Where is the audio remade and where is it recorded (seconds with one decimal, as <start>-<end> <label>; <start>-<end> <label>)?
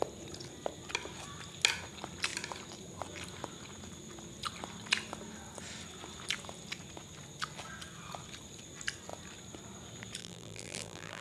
0.0-10.2 recorded; 10.2-11.2 remade